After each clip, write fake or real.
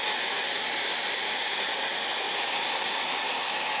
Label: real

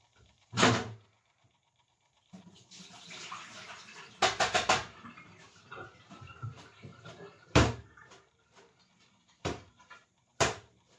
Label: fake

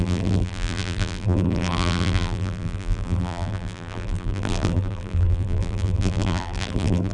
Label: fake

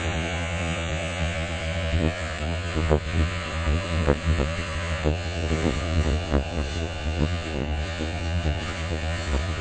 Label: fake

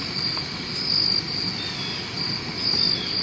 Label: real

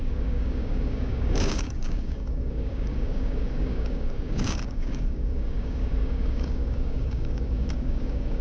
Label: fake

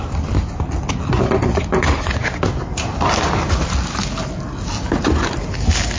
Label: real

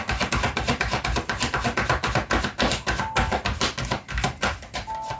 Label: real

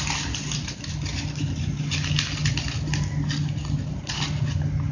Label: real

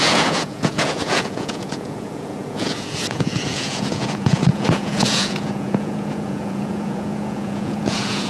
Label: fake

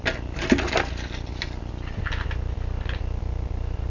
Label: real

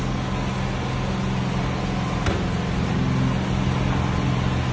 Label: real